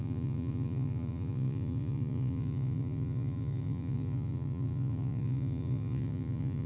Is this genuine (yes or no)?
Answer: no